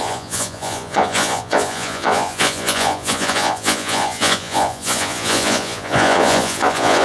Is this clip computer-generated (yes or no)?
yes